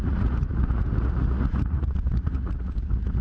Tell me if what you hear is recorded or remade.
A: remade